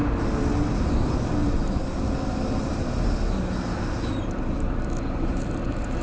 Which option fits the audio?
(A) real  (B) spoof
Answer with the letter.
A